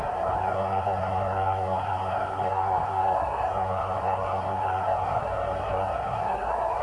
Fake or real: fake